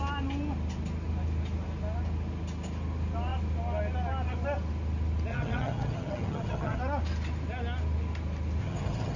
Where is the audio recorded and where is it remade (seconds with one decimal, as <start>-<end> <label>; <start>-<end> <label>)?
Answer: 0.0-5.3 recorded; 5.3-6.8 remade; 6.8-8.6 recorded; 8.6-9.2 remade